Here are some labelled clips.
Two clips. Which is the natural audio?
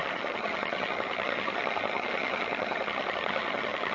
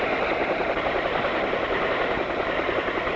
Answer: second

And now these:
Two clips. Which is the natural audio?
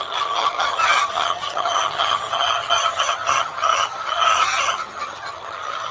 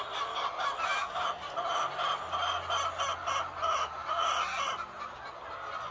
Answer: second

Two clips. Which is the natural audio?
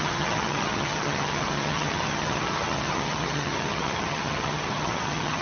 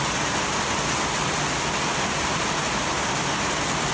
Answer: second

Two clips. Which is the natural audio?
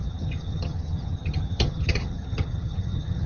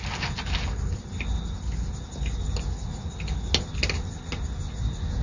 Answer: second